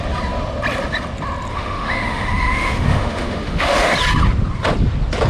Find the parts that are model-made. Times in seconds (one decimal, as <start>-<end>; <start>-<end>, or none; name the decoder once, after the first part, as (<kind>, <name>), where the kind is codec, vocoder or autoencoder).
1.5-3.9 (autoencoder, DAC-VAE)